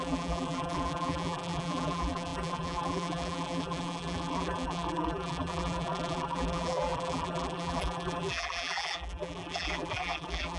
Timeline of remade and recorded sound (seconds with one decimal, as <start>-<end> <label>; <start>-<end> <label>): 0.0-10.6 remade